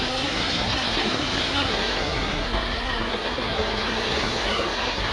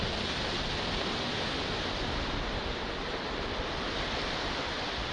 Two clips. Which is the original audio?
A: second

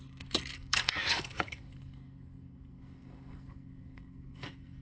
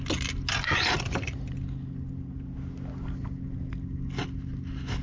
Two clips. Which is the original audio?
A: second